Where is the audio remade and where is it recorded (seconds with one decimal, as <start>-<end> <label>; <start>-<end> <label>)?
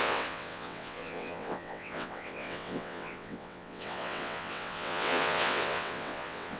0.0-6.6 remade